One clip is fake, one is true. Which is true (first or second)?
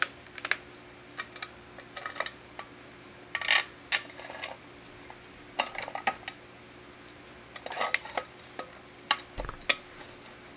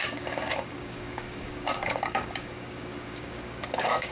first